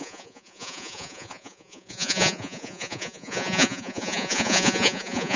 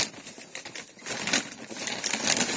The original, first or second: second